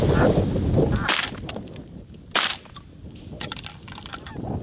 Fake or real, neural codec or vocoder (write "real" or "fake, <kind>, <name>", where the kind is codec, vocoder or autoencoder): real